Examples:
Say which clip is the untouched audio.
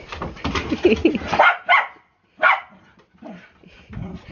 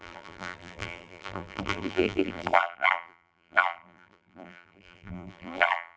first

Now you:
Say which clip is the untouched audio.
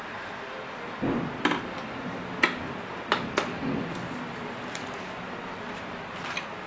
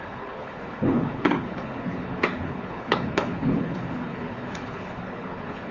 first